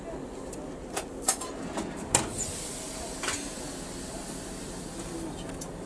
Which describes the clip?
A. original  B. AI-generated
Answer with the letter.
A